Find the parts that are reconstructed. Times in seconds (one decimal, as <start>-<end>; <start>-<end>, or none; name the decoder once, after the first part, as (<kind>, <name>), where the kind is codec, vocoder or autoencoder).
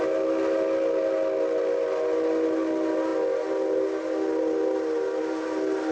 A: none